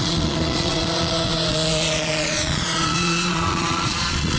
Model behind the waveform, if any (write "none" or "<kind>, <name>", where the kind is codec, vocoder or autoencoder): vocoder, Vocos